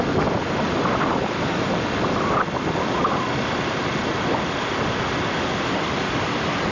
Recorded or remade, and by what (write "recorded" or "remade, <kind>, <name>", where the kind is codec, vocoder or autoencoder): recorded